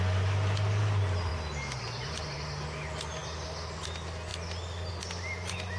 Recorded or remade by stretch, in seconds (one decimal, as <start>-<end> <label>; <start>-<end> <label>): 0.0-5.8 recorded